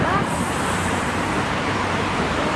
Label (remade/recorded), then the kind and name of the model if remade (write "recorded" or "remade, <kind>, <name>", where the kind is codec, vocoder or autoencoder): remade, vocoder, BigVGAN v2